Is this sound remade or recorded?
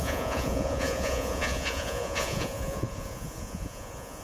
remade